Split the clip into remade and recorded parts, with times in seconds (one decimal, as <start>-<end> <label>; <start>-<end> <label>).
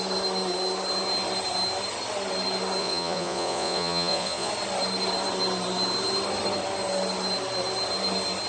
0.0-2.8 recorded; 2.8-4.5 remade; 4.5-8.5 recorded